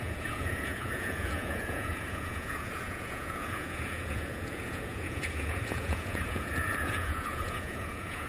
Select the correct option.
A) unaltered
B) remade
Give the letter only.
B